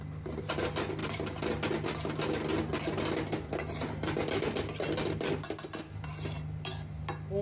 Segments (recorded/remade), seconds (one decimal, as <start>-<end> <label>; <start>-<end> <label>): 0.0-7.4 recorded